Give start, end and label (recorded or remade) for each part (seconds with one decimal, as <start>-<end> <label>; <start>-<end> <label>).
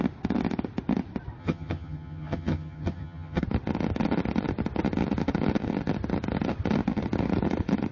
0.0-1.4 recorded; 1.4-3.4 remade; 3.4-7.9 recorded